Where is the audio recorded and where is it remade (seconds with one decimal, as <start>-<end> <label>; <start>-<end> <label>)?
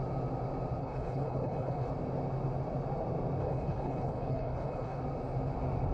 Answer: 0.0-0.8 recorded; 0.8-1.9 remade; 1.9-3.4 recorded; 3.4-5.0 remade; 5.0-5.9 recorded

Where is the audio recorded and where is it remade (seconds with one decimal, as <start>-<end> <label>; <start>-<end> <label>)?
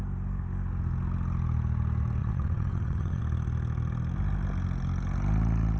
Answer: 0.0-2.2 recorded; 2.2-3.2 remade; 3.2-5.8 recorded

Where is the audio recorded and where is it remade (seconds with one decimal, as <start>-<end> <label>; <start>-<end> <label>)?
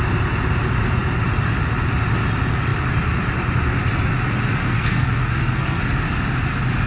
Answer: 0.0-4.6 recorded; 4.6-5.8 remade; 5.8-6.9 recorded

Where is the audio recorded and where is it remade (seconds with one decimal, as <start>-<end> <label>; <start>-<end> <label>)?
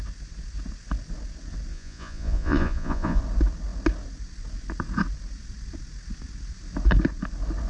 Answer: 0.0-1.7 recorded; 1.7-3.2 remade; 3.2-7.7 recorded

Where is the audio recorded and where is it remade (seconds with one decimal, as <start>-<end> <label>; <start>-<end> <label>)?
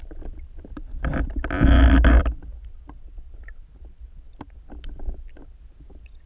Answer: 0.0-6.3 recorded